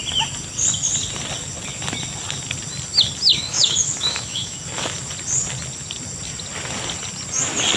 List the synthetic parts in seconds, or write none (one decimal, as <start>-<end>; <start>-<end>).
3.3-4.6